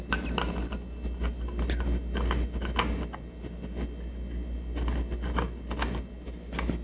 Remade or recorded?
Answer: recorded